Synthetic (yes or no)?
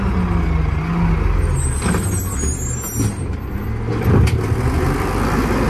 no